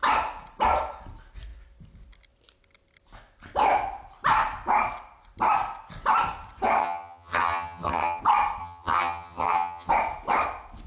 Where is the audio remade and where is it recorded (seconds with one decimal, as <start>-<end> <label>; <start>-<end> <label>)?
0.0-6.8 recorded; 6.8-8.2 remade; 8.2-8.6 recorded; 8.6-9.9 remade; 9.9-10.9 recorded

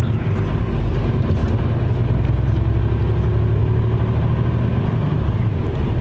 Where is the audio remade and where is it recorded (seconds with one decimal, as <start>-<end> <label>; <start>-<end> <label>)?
0.0-3.6 recorded; 3.6-4.2 remade; 4.2-4.7 recorded; 4.7-6.0 remade

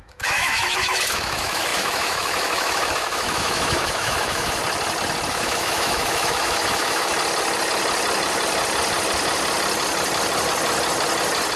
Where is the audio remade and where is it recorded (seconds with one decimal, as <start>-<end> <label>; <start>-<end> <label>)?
0.0-4.6 remade; 4.6-5.3 recorded; 5.3-7.1 remade; 7.1-11.6 recorded

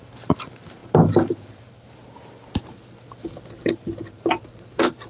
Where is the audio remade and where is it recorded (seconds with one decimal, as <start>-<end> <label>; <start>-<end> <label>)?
0.0-5.1 recorded

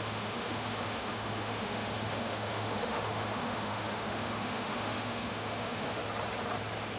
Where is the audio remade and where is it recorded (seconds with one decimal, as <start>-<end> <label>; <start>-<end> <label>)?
0.0-6.0 remade; 6.0-7.0 recorded

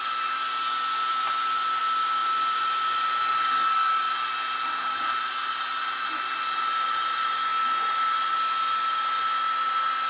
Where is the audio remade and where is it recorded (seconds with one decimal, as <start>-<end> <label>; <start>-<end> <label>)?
0.0-1.1 recorded; 1.1-1.8 remade; 1.8-2.2 recorded; 2.2-3.4 remade; 3.4-3.9 recorded; 3.9-6.4 remade; 6.4-10.1 recorded

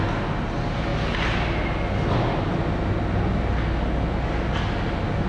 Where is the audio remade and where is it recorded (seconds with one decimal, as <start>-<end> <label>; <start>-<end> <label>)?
0.0-5.3 recorded